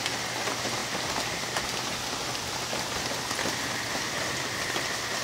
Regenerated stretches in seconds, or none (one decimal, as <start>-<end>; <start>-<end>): none